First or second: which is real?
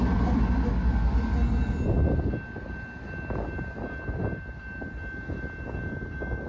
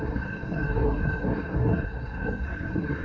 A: first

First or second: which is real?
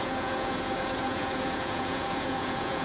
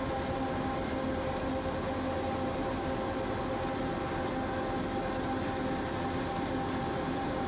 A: second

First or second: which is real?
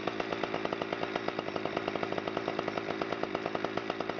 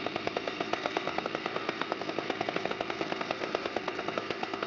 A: first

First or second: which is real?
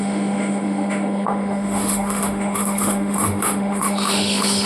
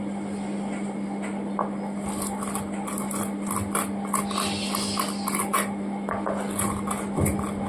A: second